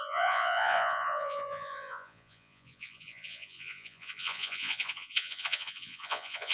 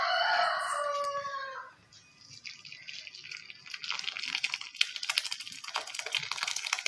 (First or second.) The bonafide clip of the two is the second